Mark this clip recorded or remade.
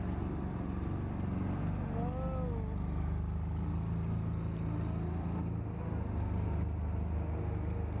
recorded